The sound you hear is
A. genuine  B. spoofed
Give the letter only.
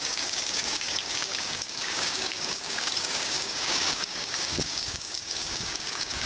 B